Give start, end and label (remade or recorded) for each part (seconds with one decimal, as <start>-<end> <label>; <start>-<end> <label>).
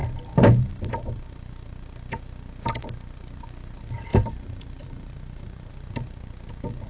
0.0-4.1 recorded; 4.1-5.7 remade; 5.7-6.9 recorded